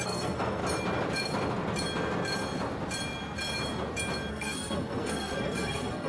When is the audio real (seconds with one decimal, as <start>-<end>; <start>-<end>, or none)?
0.6-4.3